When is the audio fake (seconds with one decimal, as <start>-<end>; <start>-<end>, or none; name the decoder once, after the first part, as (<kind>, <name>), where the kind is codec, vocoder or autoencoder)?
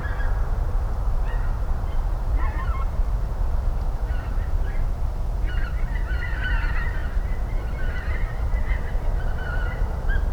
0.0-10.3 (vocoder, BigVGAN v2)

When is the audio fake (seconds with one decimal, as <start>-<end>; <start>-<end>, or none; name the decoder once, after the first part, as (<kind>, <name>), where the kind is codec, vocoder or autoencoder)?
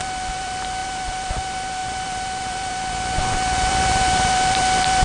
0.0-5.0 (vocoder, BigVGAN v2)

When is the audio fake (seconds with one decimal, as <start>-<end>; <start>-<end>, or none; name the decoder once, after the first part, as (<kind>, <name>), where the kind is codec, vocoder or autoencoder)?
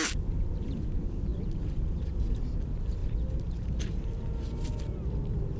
none